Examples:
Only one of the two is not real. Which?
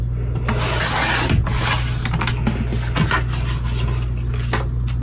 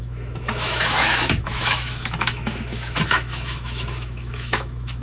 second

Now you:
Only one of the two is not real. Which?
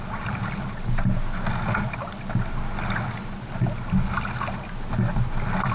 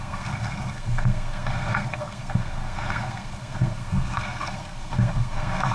second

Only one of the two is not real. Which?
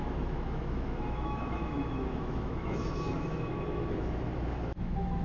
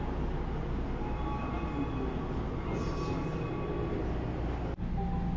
first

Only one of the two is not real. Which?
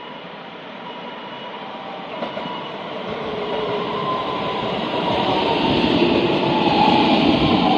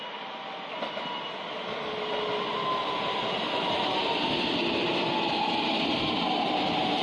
first